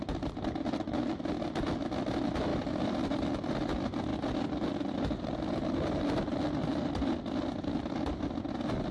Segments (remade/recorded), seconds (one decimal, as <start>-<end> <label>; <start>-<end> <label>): 0.0-2.5 recorded; 2.5-3.5 remade; 3.5-4.1 recorded; 4.1-5.2 remade; 5.2-6.7 recorded; 6.7-7.2 remade; 7.2-8.9 recorded